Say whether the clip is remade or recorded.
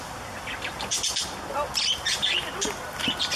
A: recorded